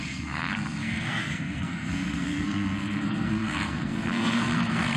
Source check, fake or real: fake